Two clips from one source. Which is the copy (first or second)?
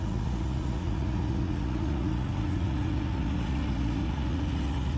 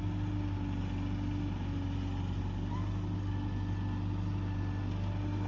first